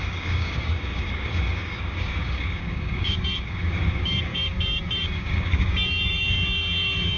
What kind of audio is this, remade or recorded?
remade